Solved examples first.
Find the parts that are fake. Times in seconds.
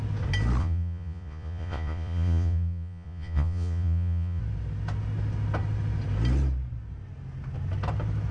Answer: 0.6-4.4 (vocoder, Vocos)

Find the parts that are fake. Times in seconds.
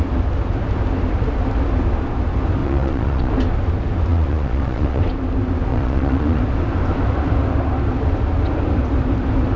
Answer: 2.6-3.3 (vocoder, Vocos); 4.1-5.0; 5.7-6.4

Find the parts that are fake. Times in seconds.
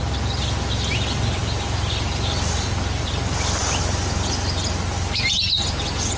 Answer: none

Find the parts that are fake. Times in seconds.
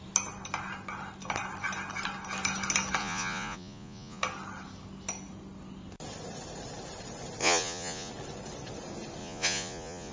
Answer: 3.0-4.2 (vocoder, Vocos); 7.4-8.1; 9.2-10.1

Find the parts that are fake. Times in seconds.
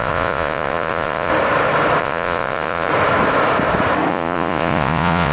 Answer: 0.0-1.3 (vocoder, Vocos); 2.0-2.9; 4.1-5.3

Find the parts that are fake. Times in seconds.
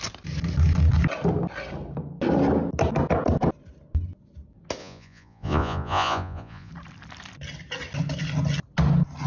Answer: 4.8-6.7 (vocoder, Vocos)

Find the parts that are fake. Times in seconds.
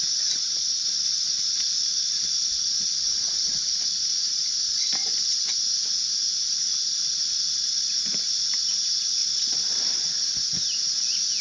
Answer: 0.4-5.5 (vocoder, Vocos); 6.4-7.9; 9.2-10.3